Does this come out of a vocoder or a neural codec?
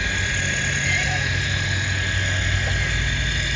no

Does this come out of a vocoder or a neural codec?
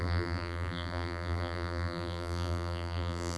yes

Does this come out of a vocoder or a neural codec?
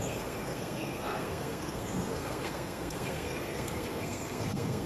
yes